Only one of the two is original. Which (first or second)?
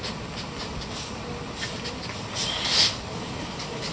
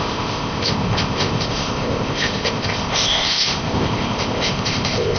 first